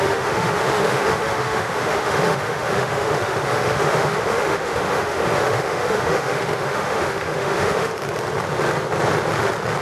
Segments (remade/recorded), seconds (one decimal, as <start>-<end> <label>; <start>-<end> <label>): 0.0-7.9 remade; 7.9-9.8 recorded